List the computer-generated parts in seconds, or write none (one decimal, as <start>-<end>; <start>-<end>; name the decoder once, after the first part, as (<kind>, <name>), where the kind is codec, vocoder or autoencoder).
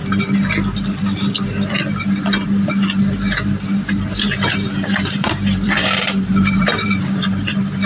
4.1-7.9 (vocoder, BigVGAN v2)